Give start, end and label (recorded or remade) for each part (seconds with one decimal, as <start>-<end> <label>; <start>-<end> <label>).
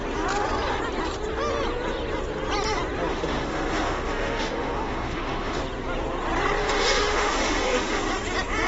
0.0-3.1 recorded; 3.1-5.6 remade; 5.6-6.6 recorded; 6.6-8.0 remade; 8.0-8.7 recorded